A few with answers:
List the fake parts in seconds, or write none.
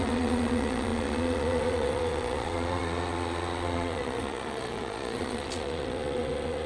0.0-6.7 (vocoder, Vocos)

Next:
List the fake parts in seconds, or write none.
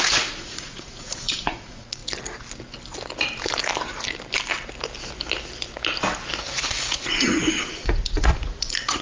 0.0-2.0 (vocoder, Vocos); 6.4-9.0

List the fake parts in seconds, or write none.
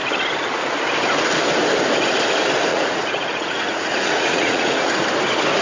2.7-4.9 (vocoder, Vocos)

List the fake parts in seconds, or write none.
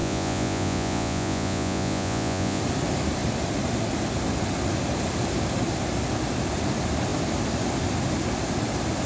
0.0-2.6 (vocoder, Vocos)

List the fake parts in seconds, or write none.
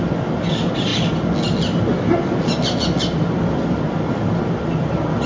none